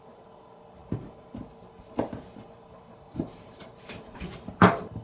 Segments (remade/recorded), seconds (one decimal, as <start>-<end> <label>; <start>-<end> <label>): 0.0-5.0 remade